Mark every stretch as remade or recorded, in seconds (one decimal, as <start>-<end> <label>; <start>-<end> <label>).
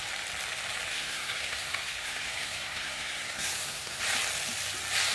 0.0-0.9 recorded; 0.9-4.0 remade; 4.0-5.1 recorded